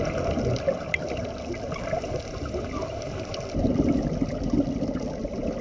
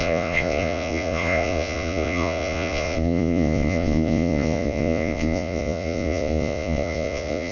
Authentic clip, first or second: first